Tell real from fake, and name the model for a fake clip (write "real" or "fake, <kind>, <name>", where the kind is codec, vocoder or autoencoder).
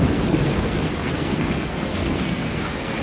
fake, codec, SNAC